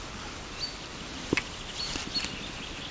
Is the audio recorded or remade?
recorded